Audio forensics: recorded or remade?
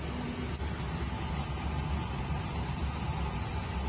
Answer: recorded